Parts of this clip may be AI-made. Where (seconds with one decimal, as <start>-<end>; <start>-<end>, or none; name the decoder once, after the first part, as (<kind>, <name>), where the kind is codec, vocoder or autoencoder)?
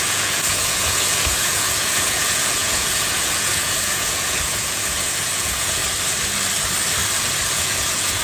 0.0-5.8 (vocoder, Vocos); 7.5-8.2